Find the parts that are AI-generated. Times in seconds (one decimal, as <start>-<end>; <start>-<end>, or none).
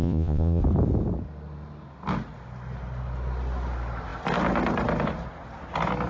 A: 0.0-0.6